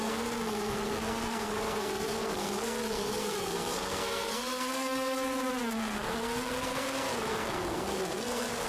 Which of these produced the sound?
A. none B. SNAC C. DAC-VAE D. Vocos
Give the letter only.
B